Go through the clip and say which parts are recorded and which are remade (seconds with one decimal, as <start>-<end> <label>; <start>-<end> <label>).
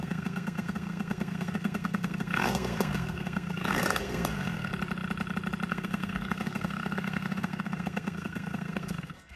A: 0.0-4.7 remade; 4.7-5.7 recorded; 5.7-9.4 remade